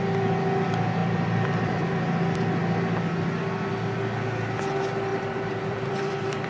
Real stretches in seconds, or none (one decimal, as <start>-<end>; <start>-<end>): 0.0-1.0; 1.9-5.1